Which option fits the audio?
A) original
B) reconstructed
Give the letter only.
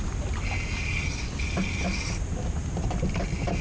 A